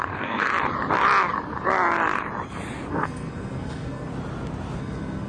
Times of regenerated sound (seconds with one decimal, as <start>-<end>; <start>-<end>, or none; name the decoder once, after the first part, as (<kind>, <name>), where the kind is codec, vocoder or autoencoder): 0.0-0.5 (codec, SNAC); 2.9-4.1; 4.8-5.3